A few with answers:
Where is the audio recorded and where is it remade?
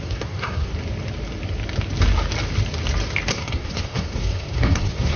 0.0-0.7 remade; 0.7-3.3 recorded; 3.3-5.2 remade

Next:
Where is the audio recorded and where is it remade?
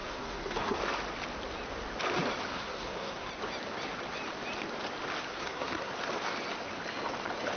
0.0-0.8 remade; 0.8-2.5 recorded; 2.5-3.3 remade; 3.3-5.3 recorded; 5.3-5.9 remade; 5.9-7.6 recorded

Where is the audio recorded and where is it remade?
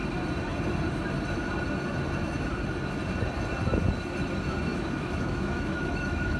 0.0-4.7 recorded; 4.7-6.4 remade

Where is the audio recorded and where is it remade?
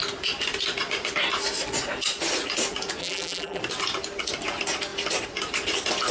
0.0-3.0 recorded; 3.0-3.6 remade; 3.6-6.1 recorded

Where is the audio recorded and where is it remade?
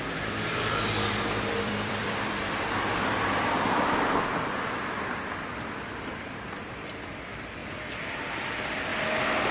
0.0-7.6 remade; 7.6-8.1 recorded; 8.1-8.9 remade; 8.9-9.5 recorded